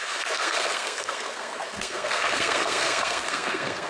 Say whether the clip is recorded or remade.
remade